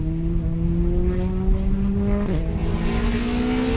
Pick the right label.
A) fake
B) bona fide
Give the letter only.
B